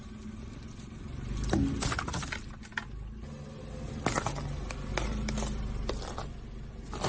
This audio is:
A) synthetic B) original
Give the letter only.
B